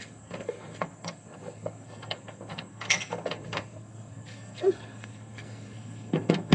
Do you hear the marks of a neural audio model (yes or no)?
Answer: yes